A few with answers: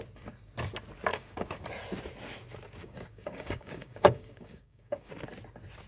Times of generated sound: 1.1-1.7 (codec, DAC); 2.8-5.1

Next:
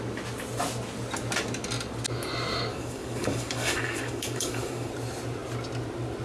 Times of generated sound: 2.7-4.9 (codec, DAC)

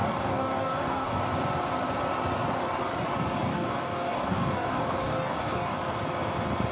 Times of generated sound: 0.0-1.2 (codec, DAC); 3.5-5.8

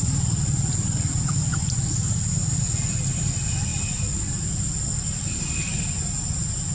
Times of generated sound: none

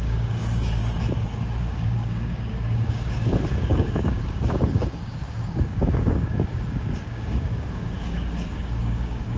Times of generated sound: 0.0-0.8 (codec, DAC); 1.6-9.4

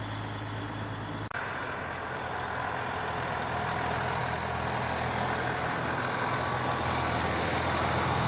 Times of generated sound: none

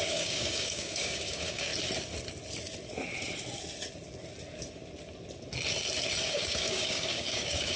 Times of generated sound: 0.0-1.7 (codec, DAC); 6.3-7.8